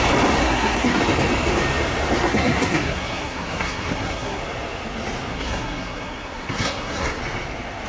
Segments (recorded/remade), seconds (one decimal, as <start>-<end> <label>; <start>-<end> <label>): 0.0-0.4 recorded; 0.4-1.0 remade; 1.0-2.2 recorded; 2.2-4.4 remade; 4.4-5.3 recorded; 5.3-7.2 remade; 7.2-7.9 recorded